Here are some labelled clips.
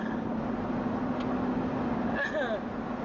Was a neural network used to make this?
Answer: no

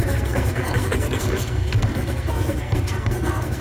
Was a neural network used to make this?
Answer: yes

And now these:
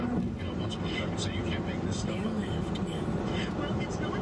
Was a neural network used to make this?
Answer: no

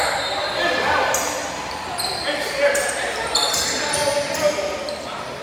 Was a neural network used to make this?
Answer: no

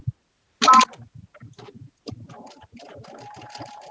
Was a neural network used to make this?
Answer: no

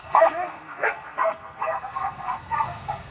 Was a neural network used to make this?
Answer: yes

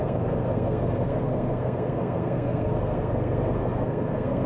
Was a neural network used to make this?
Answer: yes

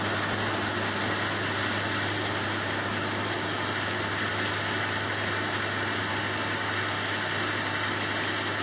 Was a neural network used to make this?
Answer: no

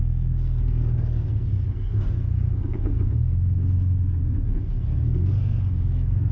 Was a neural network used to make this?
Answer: yes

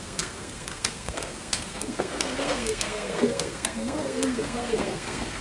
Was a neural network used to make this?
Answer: yes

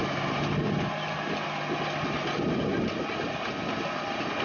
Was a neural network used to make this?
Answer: no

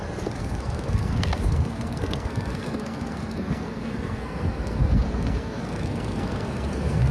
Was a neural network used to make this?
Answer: yes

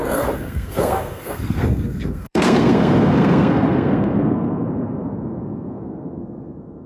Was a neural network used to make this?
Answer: yes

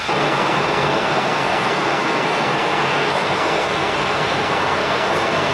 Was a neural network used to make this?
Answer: yes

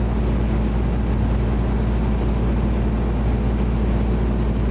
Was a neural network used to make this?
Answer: no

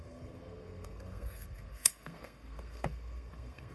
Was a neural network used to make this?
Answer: yes